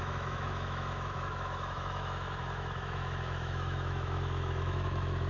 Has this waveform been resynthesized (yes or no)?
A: yes